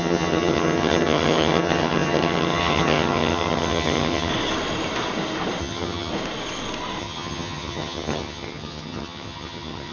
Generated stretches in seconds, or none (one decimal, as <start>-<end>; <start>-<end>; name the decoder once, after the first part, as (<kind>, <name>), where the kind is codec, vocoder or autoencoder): 0.0-4.3 (vocoder, HiFi-GAN); 5.6-6.1; 7.0-9.9